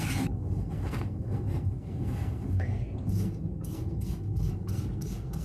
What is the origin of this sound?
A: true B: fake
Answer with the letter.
B